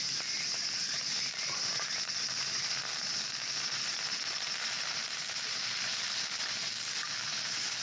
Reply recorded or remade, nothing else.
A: recorded